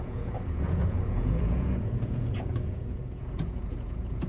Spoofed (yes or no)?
yes